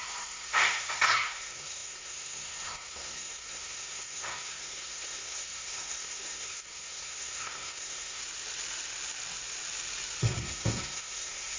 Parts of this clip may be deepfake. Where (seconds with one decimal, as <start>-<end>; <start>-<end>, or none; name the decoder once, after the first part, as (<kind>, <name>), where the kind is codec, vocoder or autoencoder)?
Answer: 0.0-8.2 (codec, SNAC); 10.2-11.6

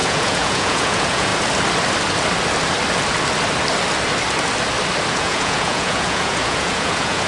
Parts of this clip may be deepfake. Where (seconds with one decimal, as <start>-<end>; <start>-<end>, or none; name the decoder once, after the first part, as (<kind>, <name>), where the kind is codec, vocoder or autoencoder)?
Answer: 0.0-1.3 (vocoder, Vocos); 5.1-7.3

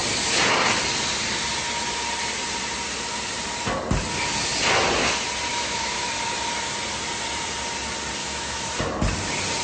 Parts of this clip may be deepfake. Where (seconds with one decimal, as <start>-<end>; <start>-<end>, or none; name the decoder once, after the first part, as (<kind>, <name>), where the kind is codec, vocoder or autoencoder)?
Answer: 5.5-6.1 (autoencoder, DAC-VAE); 8.2-8.7